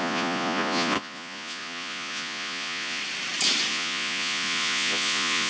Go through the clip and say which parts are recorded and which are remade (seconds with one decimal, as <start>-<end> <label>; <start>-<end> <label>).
0.0-3.0 remade; 3.0-3.7 recorded; 3.7-5.5 remade